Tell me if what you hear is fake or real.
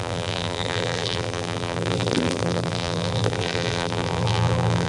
fake